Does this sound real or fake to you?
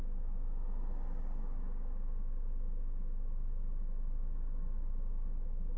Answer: real